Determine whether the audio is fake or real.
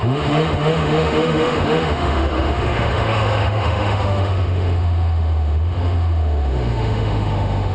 fake